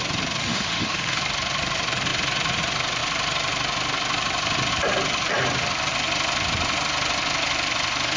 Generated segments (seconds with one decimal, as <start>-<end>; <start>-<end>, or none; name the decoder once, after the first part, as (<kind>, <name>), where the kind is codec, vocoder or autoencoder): 0.4-1.2 (autoencoder, DAC-VAE)